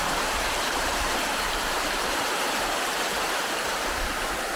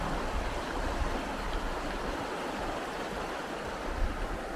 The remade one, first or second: first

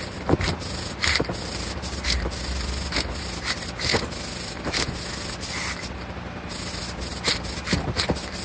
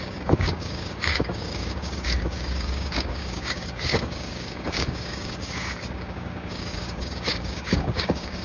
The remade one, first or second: second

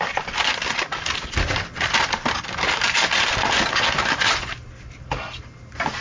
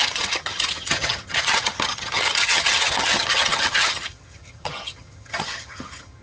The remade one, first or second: second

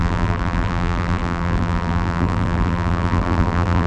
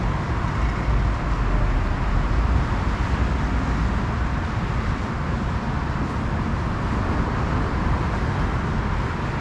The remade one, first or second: first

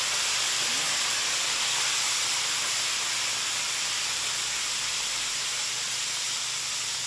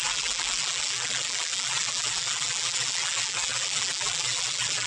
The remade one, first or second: second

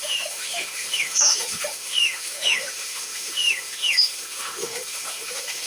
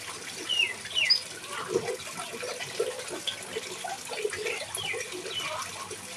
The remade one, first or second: first